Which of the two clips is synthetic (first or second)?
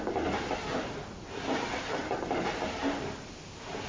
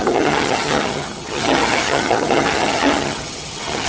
second